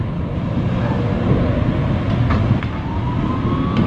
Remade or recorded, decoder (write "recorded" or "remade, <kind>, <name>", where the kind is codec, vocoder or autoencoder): recorded